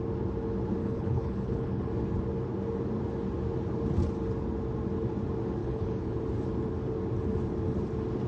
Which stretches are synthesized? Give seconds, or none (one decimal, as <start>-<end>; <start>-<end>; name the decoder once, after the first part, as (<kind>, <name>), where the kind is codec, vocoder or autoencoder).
0.8-1.9 (codec, HILCodec); 5.6-6.2